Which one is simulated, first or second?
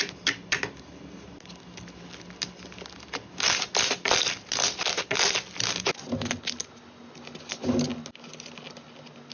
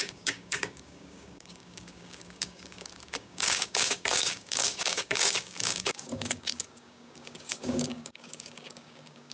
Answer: second